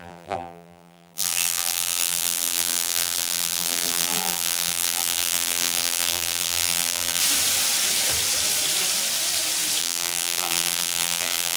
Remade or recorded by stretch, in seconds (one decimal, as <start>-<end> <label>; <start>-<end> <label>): 0.0-7.2 remade; 7.2-9.8 recorded; 9.8-11.6 remade